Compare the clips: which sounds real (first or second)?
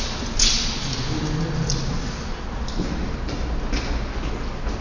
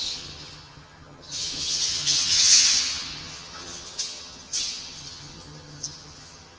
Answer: first